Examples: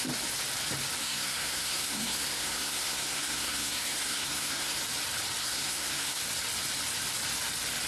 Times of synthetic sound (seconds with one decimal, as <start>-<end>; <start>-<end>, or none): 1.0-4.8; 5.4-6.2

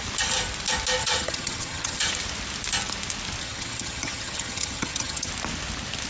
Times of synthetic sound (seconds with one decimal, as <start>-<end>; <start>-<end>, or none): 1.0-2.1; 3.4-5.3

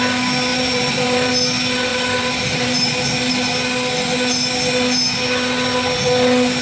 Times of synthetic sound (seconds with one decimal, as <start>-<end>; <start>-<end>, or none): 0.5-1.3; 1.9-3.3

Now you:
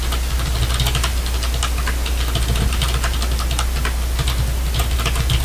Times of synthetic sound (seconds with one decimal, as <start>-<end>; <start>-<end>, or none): none